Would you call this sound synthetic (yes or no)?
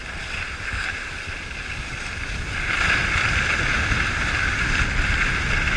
no